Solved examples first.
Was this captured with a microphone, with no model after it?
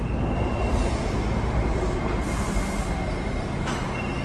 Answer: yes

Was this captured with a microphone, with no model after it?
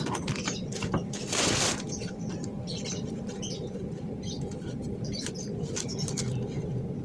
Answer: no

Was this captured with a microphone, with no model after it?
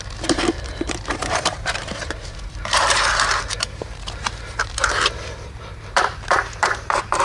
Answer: no